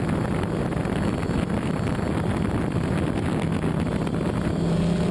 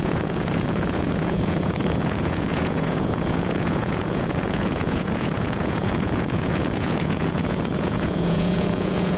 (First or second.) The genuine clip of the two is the first